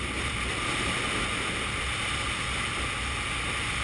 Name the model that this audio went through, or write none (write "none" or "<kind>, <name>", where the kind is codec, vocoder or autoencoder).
none